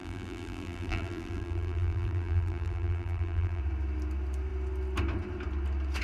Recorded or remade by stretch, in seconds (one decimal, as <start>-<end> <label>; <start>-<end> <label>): 0.0-3.6 remade; 3.6-6.0 recorded